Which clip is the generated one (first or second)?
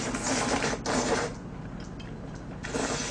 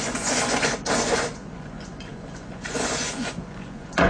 second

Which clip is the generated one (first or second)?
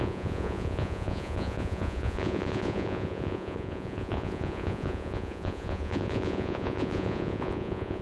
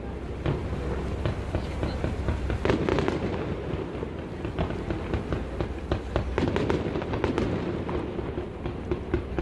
first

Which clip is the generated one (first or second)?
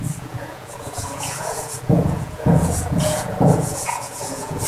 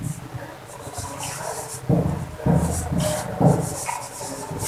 first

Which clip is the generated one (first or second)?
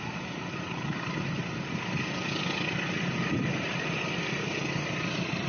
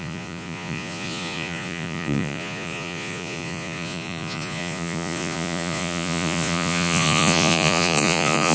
second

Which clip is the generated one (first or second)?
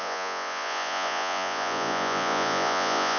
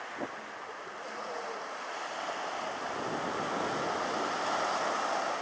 first